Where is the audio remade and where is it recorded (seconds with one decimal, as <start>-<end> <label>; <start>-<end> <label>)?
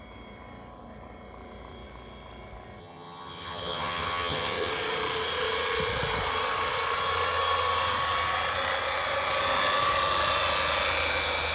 0.0-2.8 recorded; 2.8-4.7 remade; 4.7-11.5 recorded